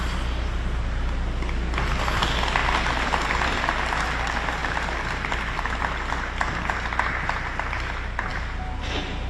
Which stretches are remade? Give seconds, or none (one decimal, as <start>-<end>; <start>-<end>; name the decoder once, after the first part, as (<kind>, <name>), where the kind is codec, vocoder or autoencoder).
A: 2.6-3.8 (vocoder, BigVGAN v2)